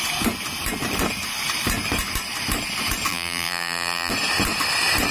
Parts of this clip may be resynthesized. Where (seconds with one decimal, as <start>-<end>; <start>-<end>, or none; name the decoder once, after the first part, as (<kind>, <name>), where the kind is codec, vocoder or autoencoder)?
3.1-4.1 (vocoder, BigVGAN v2)

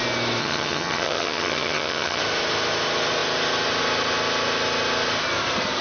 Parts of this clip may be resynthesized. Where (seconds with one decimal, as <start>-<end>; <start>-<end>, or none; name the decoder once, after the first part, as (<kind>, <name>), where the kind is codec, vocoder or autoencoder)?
0.4-2.2 (vocoder, HiFi-GAN)

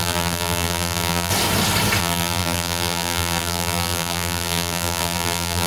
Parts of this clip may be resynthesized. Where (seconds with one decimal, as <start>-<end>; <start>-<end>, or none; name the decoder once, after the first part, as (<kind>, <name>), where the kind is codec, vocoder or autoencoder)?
0.0-1.3 (vocoder, BigVGAN v2); 2.0-5.7

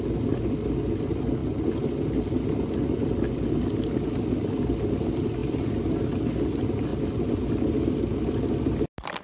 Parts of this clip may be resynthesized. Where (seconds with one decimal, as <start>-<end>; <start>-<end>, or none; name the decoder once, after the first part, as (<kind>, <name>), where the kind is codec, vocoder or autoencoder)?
none

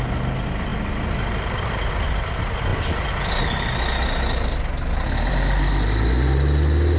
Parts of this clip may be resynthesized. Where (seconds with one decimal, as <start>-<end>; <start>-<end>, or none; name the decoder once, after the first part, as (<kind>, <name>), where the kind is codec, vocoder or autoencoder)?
none

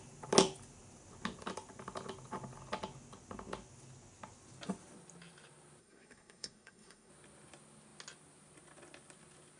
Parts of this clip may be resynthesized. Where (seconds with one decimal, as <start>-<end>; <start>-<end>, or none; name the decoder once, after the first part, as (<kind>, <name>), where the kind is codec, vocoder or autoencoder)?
5.8-7.1 (codec, SNAC)

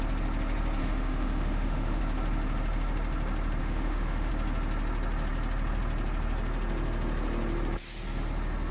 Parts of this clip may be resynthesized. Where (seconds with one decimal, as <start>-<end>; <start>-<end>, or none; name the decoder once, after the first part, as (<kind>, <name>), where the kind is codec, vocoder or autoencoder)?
0.8-2.0 (autoencoder, DAC-VAE); 3.6-4.3